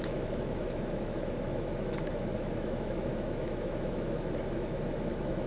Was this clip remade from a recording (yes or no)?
yes